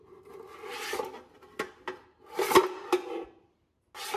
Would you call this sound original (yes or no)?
yes